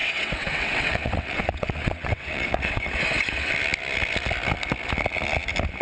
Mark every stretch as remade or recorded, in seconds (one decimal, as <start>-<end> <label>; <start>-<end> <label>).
0.0-3.5 remade; 3.5-5.8 recorded